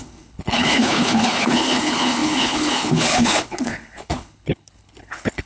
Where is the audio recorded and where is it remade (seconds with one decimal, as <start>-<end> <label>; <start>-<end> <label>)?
0.0-5.5 remade